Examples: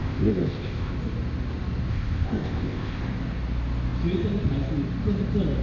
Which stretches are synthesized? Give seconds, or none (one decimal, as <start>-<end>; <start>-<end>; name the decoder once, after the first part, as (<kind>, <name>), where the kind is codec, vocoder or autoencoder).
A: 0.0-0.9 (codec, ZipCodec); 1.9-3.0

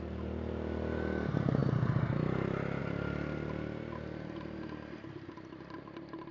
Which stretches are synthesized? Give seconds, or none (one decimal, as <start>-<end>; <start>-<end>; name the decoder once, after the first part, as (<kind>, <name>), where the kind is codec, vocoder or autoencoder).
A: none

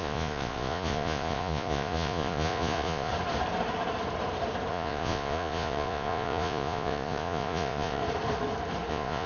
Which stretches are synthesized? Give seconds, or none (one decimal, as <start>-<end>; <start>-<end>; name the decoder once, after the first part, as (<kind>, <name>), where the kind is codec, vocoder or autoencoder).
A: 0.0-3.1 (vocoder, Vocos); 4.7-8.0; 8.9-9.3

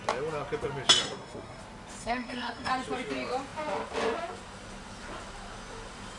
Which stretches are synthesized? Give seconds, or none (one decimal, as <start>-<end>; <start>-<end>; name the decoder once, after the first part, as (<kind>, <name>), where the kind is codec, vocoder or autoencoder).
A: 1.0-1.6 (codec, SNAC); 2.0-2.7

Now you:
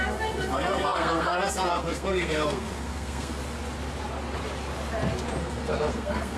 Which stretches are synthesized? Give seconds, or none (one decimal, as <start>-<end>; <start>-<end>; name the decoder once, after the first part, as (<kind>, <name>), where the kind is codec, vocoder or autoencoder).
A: 0.0-3.4 (codec, SNAC); 5.4-6.4

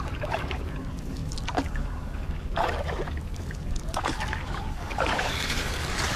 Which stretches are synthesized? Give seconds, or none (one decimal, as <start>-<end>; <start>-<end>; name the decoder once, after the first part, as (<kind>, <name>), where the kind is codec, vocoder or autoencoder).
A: 0.0-6.2 (codec, DAC)

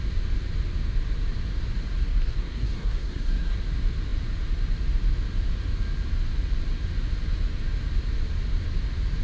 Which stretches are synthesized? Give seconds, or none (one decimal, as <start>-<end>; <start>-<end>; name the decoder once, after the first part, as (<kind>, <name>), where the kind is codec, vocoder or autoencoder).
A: 2.0-3.6 (codec, SNAC)